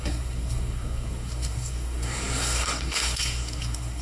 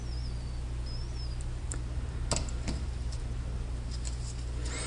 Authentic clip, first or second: second